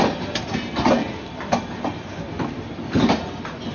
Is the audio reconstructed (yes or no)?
no